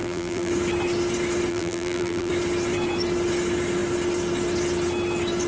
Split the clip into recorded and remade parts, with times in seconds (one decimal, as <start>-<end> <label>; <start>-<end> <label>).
0.0-0.5 remade; 0.5-1.5 recorded; 1.5-2.3 remade; 2.3-5.5 recorded